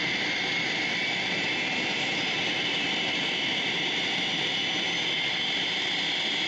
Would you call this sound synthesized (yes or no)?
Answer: no